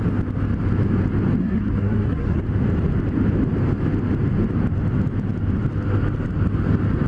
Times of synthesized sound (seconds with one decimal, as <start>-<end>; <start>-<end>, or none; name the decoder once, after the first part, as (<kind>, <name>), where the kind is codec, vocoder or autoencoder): 1.4-2.4 (codec, SNAC)